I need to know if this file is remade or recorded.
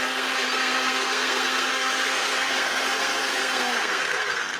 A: remade